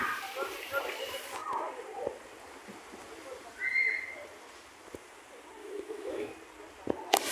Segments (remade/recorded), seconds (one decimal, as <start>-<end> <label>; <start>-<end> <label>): 0.0-5.6 recorded; 5.6-6.3 remade; 6.3-7.3 recorded